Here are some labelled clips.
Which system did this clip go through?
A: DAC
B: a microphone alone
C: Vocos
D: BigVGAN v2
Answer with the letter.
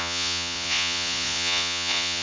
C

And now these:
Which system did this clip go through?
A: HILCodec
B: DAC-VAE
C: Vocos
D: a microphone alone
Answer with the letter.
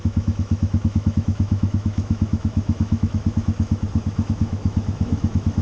B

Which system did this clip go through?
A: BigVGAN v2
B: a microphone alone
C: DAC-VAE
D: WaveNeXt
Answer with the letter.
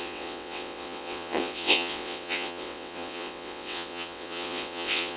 D